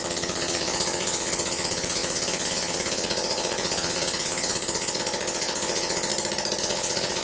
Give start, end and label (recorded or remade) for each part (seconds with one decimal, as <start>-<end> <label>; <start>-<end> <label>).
0.0-6.1 remade; 6.1-6.6 recorded; 6.6-7.2 remade